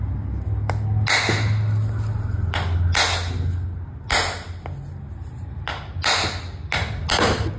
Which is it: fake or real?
real